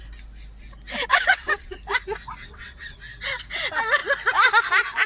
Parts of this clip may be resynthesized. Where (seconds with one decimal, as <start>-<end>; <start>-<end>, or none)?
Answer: 1.1-1.8; 2.4-3.0